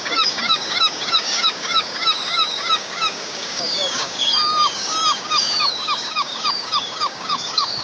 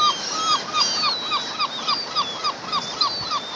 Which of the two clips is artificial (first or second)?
first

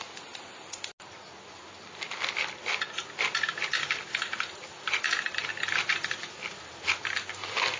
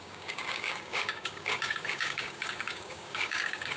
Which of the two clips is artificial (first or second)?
second